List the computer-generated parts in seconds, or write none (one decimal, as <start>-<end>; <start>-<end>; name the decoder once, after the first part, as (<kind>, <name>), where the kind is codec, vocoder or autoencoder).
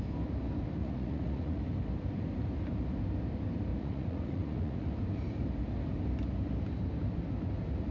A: 0.8-1.6 (vocoder, Vocos); 3.7-4.9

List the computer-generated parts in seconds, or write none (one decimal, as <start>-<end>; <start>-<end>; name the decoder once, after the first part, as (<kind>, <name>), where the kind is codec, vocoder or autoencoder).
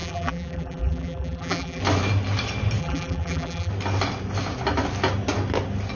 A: 0.0-1.8 (vocoder, BigVGAN v2); 2.8-3.7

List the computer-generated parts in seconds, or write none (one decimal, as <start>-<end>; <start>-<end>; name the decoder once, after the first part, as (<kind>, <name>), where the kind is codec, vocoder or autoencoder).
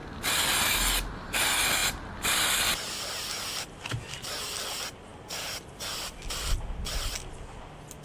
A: none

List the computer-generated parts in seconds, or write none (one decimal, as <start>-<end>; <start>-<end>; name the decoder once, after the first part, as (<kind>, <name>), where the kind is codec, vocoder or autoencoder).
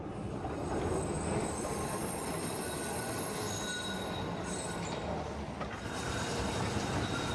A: none